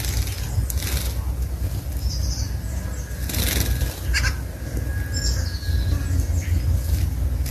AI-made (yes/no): no